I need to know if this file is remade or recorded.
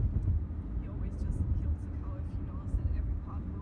recorded